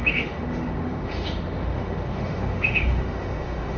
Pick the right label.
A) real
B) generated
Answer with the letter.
B